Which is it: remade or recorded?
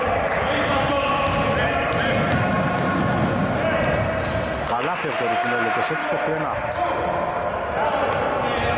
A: recorded